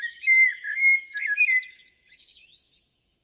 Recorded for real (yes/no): no